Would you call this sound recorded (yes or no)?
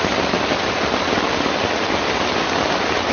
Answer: yes